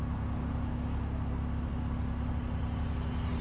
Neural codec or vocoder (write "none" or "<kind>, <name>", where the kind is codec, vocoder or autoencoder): none